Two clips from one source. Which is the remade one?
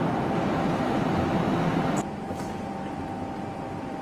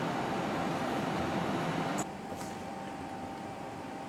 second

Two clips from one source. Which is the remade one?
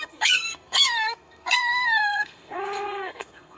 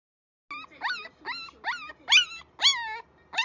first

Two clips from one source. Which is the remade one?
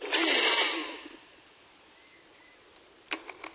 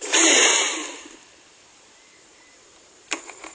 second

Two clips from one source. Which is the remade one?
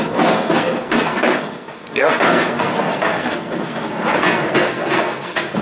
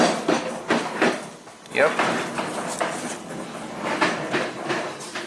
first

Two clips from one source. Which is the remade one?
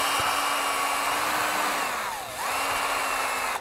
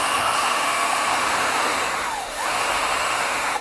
second